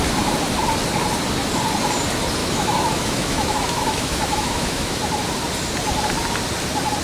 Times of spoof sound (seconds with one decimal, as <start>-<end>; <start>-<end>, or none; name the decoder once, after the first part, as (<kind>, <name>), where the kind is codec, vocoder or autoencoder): 2.4-5.0 (autoencoder, DAC-VAE)